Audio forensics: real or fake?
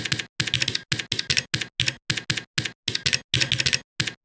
real